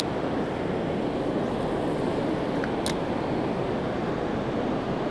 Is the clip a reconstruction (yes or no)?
no